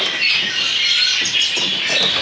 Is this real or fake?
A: real